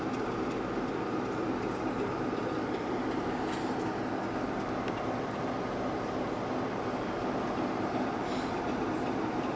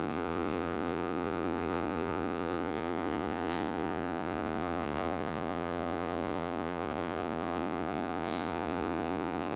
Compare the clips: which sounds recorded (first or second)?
first